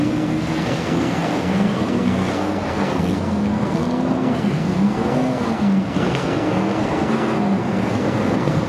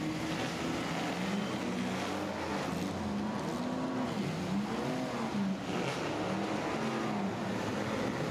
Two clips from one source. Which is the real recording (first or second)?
second